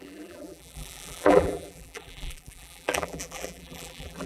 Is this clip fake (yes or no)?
yes